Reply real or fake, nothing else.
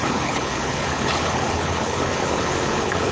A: fake